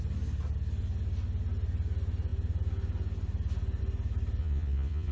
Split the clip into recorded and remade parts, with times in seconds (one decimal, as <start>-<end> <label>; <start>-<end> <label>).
0.0-4.4 recorded; 4.4-5.1 remade